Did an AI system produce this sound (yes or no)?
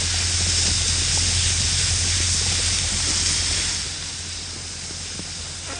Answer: no